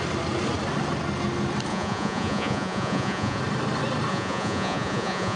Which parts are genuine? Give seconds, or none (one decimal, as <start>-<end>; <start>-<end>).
0.0-1.7; 3.4-4.1

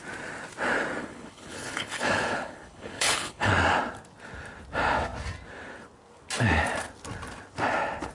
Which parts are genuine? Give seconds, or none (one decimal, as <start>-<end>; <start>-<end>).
0.0-1.0; 3.5-8.1

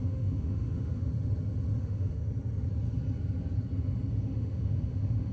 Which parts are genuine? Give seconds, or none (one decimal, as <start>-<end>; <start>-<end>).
1.1-1.8; 2.2-4.1